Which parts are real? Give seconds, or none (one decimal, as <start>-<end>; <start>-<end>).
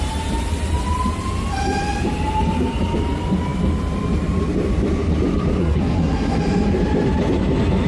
0.0-5.6; 6.4-7.9